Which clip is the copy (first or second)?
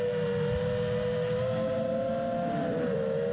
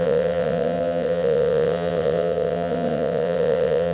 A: second